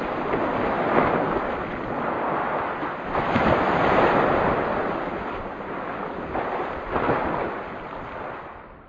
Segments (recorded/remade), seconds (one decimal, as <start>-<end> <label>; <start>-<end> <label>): 0.0-8.9 recorded